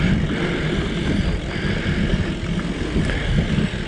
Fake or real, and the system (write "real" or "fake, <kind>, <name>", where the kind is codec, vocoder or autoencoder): real